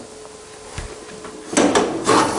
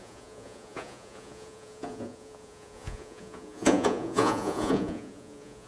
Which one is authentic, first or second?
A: first